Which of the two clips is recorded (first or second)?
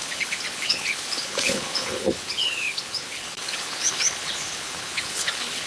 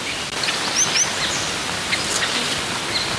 second